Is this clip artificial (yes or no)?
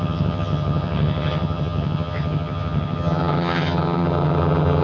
yes